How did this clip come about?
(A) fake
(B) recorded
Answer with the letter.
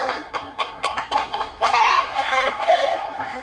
A